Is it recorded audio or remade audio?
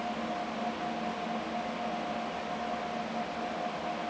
recorded